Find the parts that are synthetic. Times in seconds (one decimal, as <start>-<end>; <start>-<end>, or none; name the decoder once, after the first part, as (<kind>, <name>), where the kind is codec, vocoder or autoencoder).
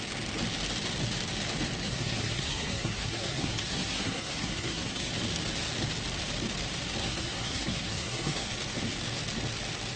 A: 1.8-5.1 (codec, SNAC); 7.0-8.5